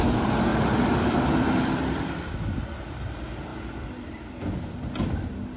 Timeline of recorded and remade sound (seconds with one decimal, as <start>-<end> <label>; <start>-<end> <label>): 0.0-0.5 recorded; 0.5-2.3 remade; 2.3-5.6 recorded

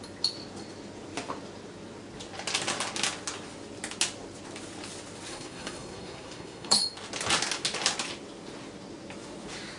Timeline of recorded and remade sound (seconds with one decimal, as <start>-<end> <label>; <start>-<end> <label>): 0.0-5.3 recorded; 5.3-6.8 remade; 6.8-9.8 recorded

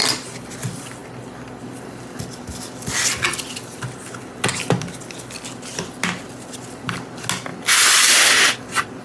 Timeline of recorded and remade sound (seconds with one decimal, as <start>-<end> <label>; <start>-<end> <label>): 0.0-9.0 recorded

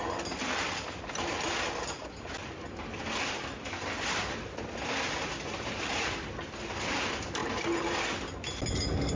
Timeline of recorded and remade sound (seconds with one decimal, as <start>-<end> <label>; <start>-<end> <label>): 0.0-9.2 recorded

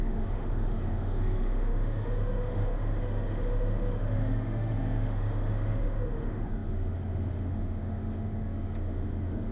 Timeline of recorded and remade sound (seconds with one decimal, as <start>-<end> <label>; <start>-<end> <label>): 0.0-9.5 remade

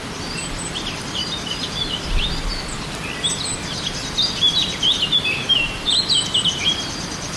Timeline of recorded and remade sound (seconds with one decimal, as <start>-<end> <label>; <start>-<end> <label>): 0.0-7.4 remade